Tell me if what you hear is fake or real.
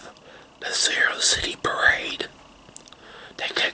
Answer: real